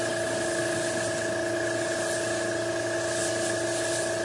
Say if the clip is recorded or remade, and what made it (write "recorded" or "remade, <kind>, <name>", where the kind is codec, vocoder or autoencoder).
recorded